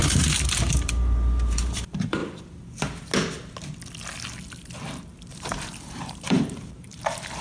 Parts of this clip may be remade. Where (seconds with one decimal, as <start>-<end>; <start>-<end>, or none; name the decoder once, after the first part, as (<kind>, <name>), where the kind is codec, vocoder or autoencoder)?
0.0-2.2 (vocoder, BigVGAN v2); 5.3-7.4